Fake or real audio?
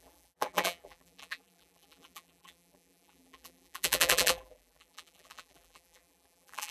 fake